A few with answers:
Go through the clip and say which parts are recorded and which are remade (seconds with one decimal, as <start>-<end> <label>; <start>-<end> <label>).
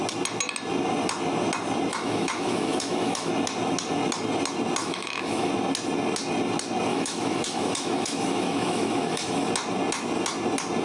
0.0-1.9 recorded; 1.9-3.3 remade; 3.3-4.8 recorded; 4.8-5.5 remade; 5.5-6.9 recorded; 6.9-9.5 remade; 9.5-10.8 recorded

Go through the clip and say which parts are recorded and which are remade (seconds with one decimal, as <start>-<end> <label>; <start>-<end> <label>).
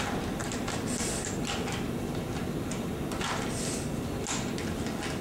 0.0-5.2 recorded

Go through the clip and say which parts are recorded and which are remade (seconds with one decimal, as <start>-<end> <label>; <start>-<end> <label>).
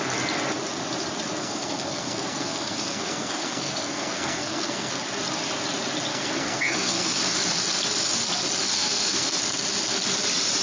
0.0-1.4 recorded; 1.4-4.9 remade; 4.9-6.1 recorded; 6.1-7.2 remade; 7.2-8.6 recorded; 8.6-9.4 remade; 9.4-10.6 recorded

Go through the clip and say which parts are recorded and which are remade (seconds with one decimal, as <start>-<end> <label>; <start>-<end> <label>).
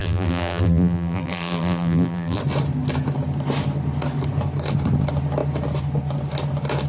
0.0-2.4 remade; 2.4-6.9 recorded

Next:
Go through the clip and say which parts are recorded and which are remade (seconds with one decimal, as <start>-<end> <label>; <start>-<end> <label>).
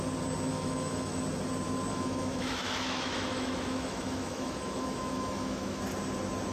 0.0-0.5 recorded; 0.5-1.2 remade; 1.2-1.9 recorded; 1.9-5.8 remade; 5.8-6.5 recorded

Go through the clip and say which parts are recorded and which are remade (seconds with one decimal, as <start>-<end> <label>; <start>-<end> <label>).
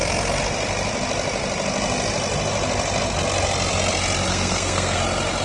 0.0-4.3 recorded; 4.3-5.0 remade; 5.0-5.4 recorded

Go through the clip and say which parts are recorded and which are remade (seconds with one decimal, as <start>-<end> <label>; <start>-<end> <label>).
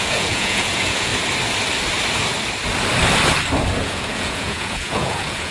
0.0-1.1 remade; 1.1-3.8 recorded; 3.8-5.5 remade